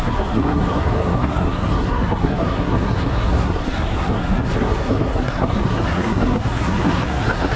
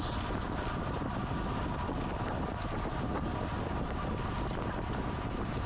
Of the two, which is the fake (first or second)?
first